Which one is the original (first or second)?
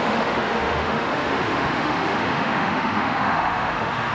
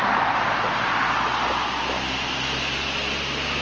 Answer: second